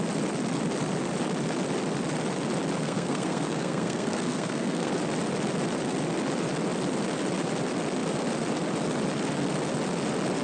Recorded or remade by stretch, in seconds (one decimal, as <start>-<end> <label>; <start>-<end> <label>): 0.0-2.8 recorded; 2.8-4.9 remade; 4.9-10.4 recorded